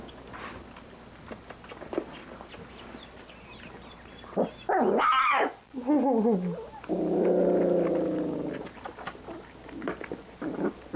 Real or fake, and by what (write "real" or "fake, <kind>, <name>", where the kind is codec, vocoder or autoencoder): real